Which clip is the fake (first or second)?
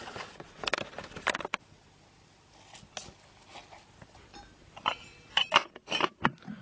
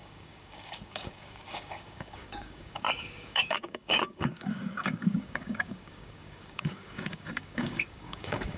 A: second